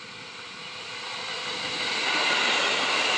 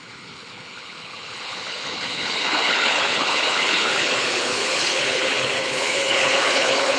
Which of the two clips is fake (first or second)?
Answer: second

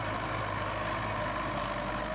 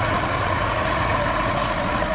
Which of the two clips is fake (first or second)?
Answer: second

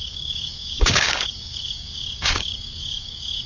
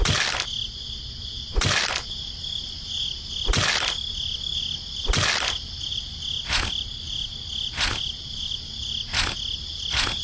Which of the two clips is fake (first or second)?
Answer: first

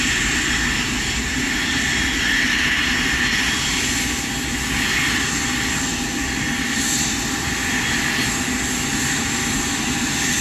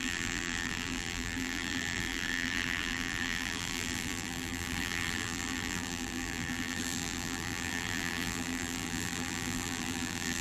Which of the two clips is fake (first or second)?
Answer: second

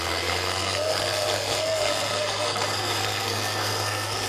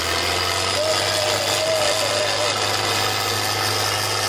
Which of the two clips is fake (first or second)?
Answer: first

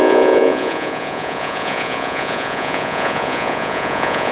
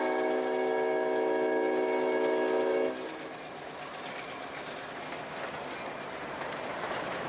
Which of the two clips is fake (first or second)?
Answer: first